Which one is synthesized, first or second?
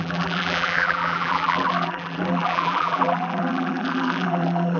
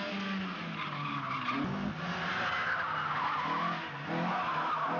first